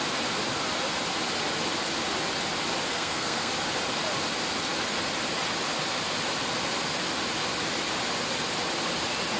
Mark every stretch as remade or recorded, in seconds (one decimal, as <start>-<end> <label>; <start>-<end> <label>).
0.0-2.9 recorded; 2.9-3.5 remade; 3.5-9.4 recorded

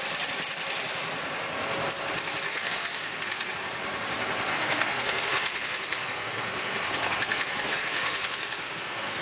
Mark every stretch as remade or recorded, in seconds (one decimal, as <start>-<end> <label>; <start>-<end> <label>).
0.0-2.5 recorded; 2.5-3.5 remade; 3.5-4.5 recorded; 4.5-9.2 remade

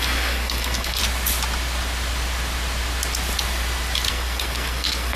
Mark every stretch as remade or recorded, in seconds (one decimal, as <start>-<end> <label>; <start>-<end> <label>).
0.0-1.0 remade; 1.0-4.1 recorded; 4.1-5.2 remade

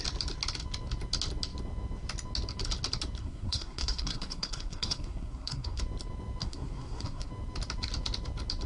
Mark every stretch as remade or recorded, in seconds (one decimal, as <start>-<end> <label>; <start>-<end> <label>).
0.0-3.2 recorded; 3.2-5.8 remade; 5.8-6.4 recorded; 6.4-7.3 remade; 7.3-8.7 recorded

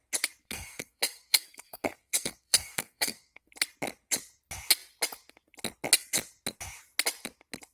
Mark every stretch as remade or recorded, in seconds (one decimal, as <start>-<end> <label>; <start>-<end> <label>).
0.0-0.4 recorded; 0.4-3.5 remade; 3.5-7.7 recorded

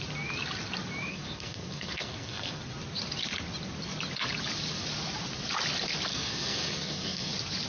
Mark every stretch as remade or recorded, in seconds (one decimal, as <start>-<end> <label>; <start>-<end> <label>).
0.0-1.1 recorded; 1.1-2.6 remade; 2.6-6.1 recorded; 6.1-7.3 remade; 7.3-7.7 recorded

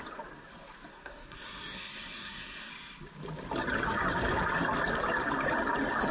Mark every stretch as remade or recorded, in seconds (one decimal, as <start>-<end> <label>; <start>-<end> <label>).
0.0-0.9 recorded; 0.9-2.7 remade; 2.7-6.1 recorded